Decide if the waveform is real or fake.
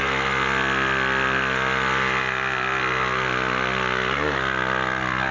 real